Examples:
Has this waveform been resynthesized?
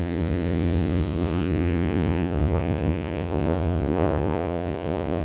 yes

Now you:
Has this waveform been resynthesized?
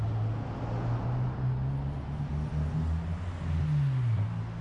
no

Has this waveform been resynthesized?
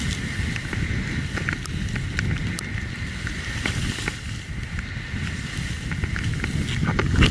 no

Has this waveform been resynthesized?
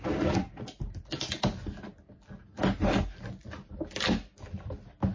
no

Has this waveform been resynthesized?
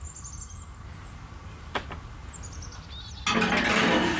no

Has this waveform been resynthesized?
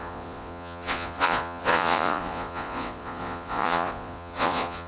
yes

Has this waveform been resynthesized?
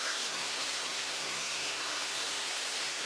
yes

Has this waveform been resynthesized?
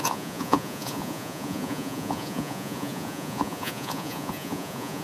yes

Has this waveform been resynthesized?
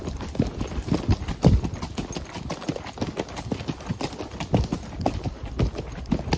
no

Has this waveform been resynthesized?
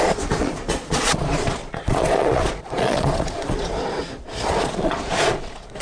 yes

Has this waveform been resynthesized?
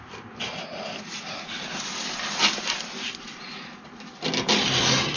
no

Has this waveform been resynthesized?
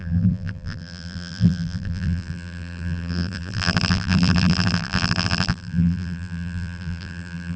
yes